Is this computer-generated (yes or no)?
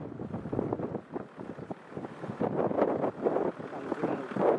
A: no